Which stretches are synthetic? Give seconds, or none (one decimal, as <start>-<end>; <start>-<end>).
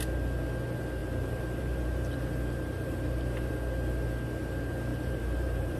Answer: 1.0-3.5; 4.9-5.8